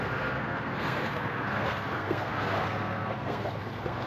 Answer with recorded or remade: remade